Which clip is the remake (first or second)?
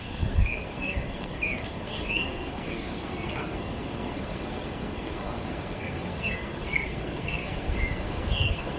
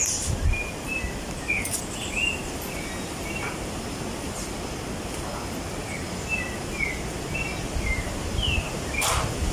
first